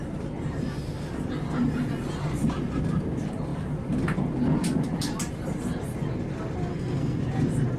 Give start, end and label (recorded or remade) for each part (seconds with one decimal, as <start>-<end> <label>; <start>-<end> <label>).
0.0-6.7 recorded; 6.7-7.2 remade; 7.2-7.8 recorded